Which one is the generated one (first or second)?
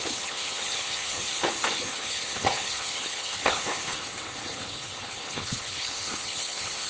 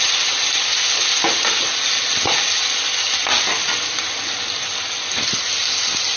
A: first